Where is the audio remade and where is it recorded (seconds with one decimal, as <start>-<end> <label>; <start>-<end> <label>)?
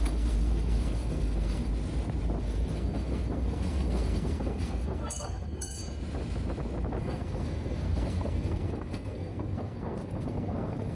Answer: 0.0-1.7 remade; 1.7-2.4 recorded; 2.4-5.8 remade; 5.8-7.0 recorded; 7.0-10.9 remade